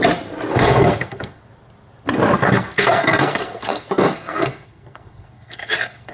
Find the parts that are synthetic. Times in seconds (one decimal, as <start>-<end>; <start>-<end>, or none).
0.5-1.4; 2.4-6.1